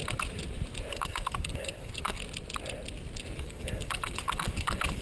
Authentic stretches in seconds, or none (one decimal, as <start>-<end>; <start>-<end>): 0.0-0.9; 2.2-3.4